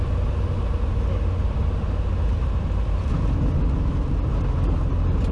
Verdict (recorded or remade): recorded